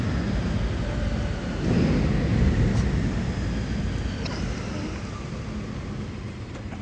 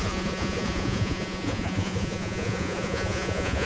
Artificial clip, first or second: second